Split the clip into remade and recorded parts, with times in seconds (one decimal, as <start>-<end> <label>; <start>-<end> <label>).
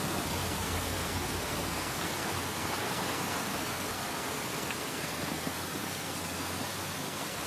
0.0-7.5 remade